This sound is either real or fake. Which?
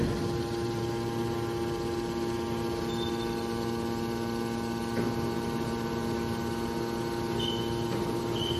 real